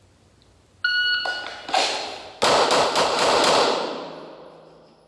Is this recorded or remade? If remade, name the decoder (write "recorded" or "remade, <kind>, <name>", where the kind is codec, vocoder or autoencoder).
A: recorded